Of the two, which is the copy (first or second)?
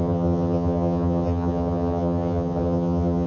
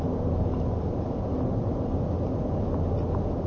first